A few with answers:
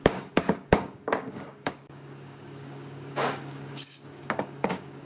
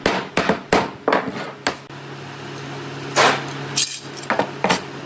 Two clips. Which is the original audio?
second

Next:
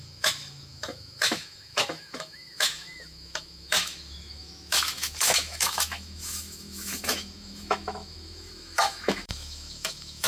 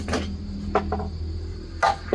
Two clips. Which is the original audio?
second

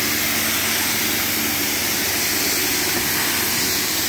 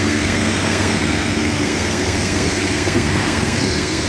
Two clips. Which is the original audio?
first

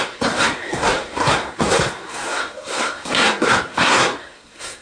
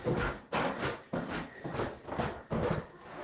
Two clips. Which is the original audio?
second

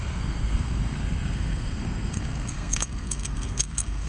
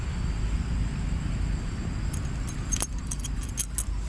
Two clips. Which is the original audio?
second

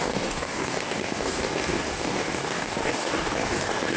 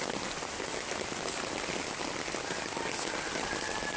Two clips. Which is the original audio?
second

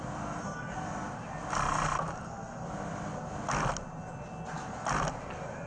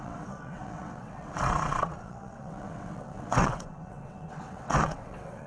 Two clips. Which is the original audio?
first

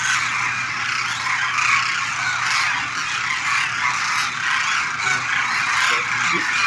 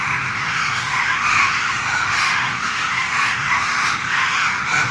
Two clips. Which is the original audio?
first